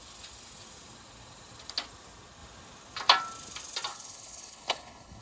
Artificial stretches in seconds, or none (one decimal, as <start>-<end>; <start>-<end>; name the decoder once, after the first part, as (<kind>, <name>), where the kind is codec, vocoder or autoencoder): 3.9-5.2 (codec, HILCodec)